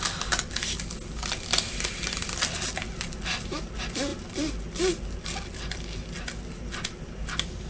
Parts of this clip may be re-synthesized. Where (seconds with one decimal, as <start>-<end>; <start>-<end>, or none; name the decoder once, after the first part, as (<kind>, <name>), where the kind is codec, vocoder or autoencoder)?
none